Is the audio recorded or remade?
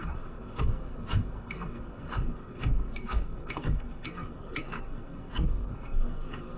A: remade